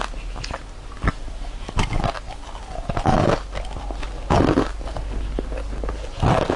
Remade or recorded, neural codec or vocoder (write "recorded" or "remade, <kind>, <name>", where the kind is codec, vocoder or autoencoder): recorded